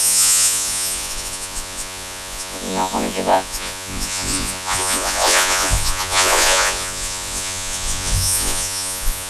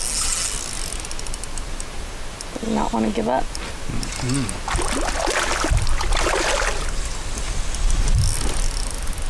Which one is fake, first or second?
first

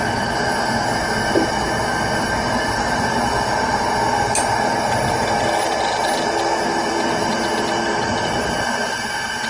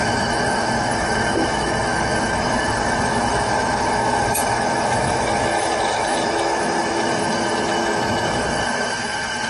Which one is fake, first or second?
second